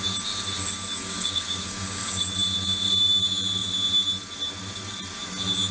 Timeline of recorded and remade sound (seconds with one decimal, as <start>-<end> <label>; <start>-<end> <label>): 0.0-1.0 recorded; 1.0-2.2 remade; 2.2-5.7 recorded